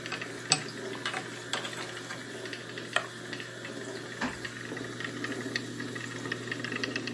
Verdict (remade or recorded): recorded